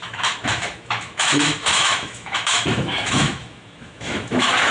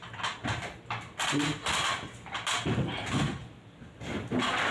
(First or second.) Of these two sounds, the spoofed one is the first